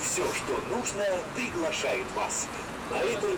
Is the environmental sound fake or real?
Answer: fake